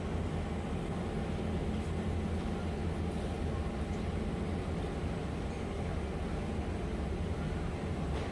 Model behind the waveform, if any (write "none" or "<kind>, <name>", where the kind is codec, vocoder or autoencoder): none